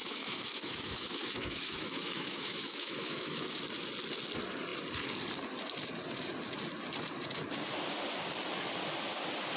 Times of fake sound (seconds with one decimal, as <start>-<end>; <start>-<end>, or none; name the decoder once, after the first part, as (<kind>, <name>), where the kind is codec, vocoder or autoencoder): 0.0-3.6 (autoencoder, DAC-VAE)